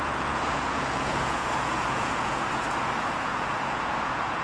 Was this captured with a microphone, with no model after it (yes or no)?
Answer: no